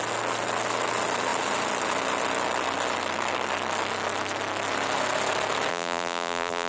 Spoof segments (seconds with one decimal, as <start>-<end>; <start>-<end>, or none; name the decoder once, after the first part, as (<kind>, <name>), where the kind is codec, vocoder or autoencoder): 5.7-6.7 (vocoder, BigVGAN v2)